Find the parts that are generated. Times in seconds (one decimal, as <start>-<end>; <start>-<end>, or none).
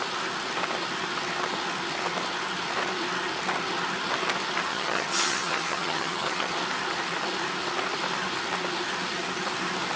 4.7-6.5